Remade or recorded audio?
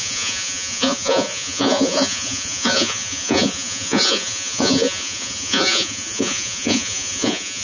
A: remade